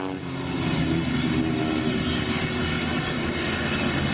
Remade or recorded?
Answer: recorded